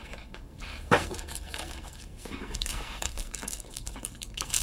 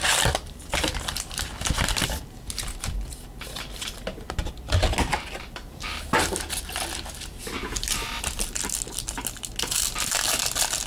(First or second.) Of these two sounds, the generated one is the first